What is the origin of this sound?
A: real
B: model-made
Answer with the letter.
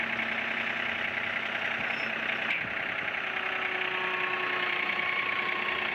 A